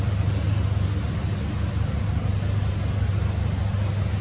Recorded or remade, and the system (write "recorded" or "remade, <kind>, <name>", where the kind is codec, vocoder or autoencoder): recorded